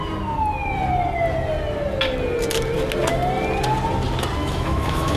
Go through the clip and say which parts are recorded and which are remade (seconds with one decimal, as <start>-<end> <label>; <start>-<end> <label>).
0.0-4.4 recorded; 4.4-5.2 remade